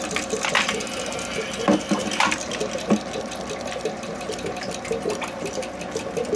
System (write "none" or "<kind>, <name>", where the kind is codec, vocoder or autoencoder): none